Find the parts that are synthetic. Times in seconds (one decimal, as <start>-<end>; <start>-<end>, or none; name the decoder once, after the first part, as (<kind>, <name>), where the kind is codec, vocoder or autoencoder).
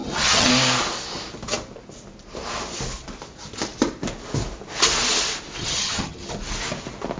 0.0-0.5 (vocoder, HiFi-GAN); 5.6-6.3